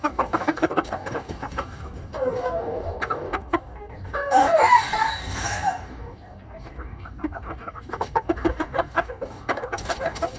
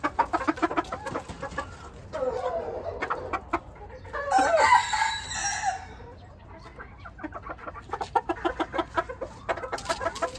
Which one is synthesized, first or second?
first